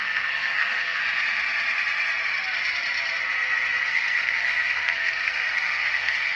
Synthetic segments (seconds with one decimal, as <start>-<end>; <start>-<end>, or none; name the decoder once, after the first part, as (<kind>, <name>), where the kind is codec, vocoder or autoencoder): 0.0-1.0 (codec, SNAC); 3.8-6.4